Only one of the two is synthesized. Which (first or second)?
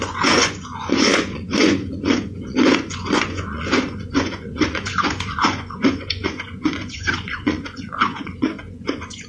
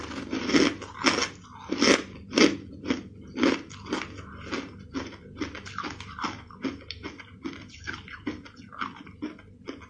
first